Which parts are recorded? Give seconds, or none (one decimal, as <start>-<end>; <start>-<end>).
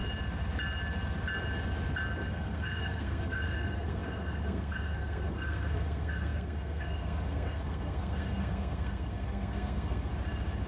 0.0-2.3; 10.1-10.7